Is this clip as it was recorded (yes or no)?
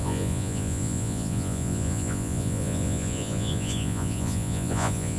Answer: no